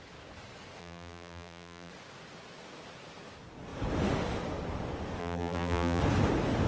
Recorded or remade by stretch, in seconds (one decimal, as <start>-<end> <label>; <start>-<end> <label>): 0.0-0.8 recorded; 0.8-1.9 remade; 1.9-5.2 recorded; 5.2-6.0 remade; 6.0-6.7 recorded